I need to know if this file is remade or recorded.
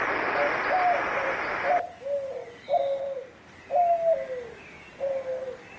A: recorded